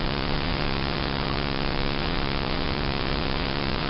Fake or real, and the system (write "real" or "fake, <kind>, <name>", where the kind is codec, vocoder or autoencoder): fake, vocoder, WaveNeXt